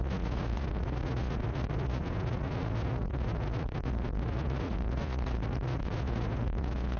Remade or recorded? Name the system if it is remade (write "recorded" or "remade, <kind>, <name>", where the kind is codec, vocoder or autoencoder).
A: remade, vocoder, Vocos